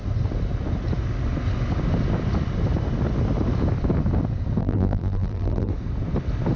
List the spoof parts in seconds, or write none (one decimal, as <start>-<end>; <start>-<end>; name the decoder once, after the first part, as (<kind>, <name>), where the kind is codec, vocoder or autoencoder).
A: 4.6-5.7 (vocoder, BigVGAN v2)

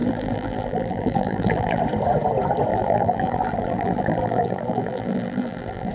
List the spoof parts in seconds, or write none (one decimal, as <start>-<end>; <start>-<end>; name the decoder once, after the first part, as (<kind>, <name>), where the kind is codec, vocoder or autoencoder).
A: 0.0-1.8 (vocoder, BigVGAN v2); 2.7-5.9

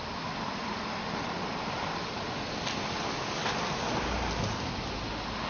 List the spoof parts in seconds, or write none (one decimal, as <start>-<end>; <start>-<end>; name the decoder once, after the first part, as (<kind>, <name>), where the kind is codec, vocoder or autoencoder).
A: none

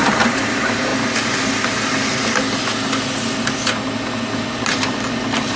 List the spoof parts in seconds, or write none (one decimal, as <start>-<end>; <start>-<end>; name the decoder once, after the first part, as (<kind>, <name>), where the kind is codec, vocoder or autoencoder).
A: 0.0-0.9 (vocoder, BigVGAN v2); 4.3-5.6

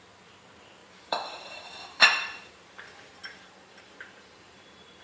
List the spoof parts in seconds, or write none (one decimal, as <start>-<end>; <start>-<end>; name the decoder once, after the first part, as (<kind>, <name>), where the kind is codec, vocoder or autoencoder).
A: 0.8-2.8 (vocoder, BigVGAN v2); 3.2-5.0